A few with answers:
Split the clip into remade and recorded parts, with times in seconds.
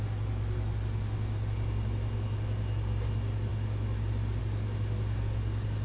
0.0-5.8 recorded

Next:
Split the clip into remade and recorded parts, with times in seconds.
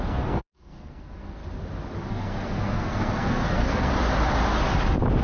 0.0-1.4 remade; 1.4-2.1 recorded; 2.1-3.9 remade; 3.9-5.2 recorded